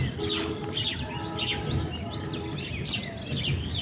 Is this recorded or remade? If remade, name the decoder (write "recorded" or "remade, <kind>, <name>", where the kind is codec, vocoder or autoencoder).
recorded